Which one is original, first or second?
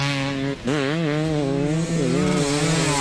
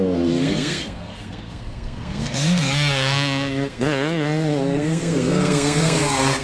first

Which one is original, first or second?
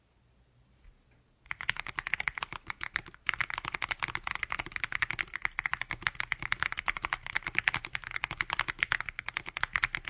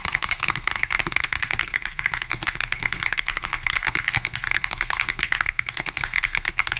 first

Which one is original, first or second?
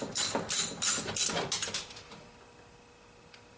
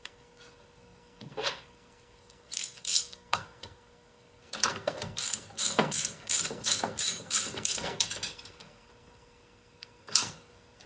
first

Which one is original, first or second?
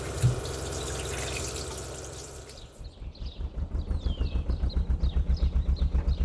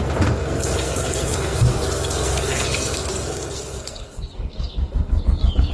first